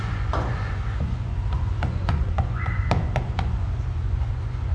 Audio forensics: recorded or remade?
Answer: remade